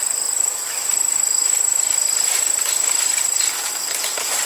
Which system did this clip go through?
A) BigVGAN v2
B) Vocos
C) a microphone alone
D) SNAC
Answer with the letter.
C